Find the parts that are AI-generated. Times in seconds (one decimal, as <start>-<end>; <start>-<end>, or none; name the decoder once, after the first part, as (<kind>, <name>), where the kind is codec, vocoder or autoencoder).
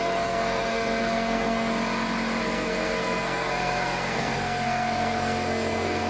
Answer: 0.0-1.7 (codec, SNAC); 2.4-6.1